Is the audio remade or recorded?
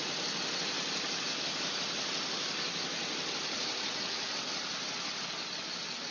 recorded